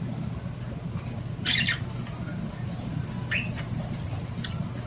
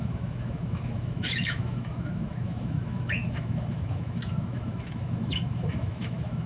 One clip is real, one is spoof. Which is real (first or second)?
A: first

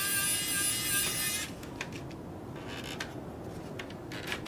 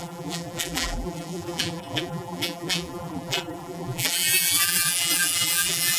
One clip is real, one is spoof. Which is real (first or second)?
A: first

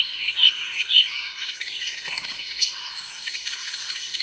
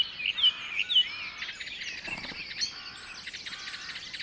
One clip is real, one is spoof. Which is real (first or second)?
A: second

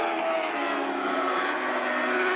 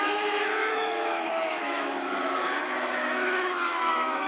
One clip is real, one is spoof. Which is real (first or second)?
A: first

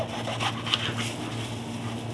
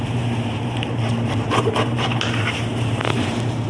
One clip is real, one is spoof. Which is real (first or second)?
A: first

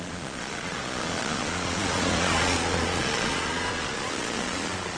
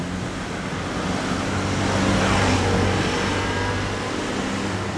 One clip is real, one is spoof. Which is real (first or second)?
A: second